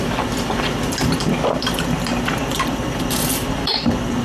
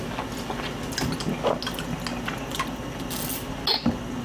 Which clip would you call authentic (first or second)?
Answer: second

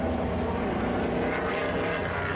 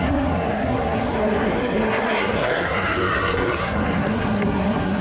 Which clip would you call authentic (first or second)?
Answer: first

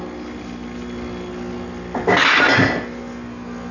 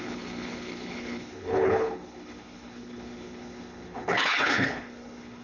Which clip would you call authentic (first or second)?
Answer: first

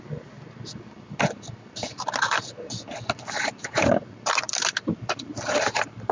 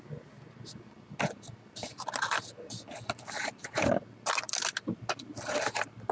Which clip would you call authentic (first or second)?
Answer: second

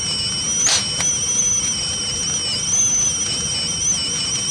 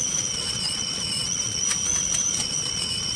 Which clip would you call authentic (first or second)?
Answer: first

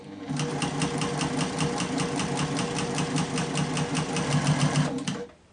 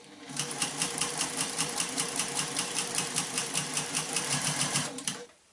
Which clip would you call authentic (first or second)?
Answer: first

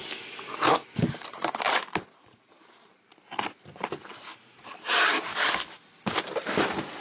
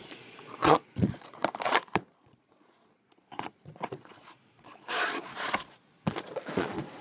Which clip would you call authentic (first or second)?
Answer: first